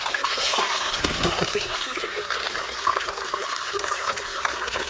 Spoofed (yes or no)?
yes